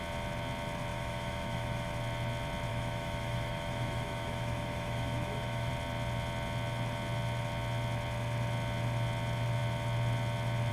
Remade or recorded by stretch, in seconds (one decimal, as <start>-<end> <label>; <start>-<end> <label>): 0.0-0.9 recorded; 0.9-1.9 remade; 1.9-2.7 recorded; 2.7-5.7 remade; 5.7-10.7 recorded

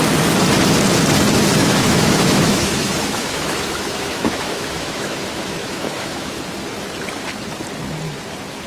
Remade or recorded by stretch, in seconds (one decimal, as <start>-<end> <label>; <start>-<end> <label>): 0.0-1.6 recorded; 1.6-6.4 remade; 6.4-8.7 recorded

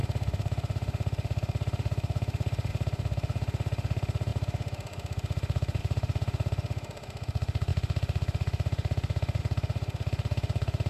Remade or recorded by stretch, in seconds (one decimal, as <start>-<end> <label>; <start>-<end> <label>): 0.0-10.9 remade